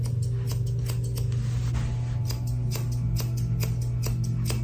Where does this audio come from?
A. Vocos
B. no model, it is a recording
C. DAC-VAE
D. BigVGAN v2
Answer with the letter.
B